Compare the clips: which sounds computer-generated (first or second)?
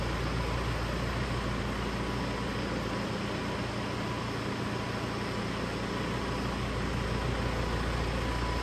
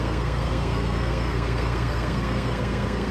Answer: second